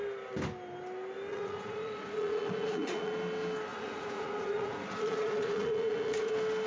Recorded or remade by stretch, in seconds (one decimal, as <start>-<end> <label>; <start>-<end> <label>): 0.0-1.3 recorded; 1.3-3.1 remade; 3.1-3.7 recorded; 3.7-6.3 remade; 6.3-6.7 recorded